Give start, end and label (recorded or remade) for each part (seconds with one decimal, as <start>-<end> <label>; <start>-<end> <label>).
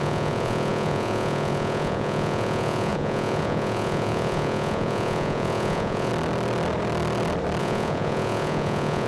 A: 0.0-6.1 remade; 6.1-7.6 recorded; 7.6-9.1 remade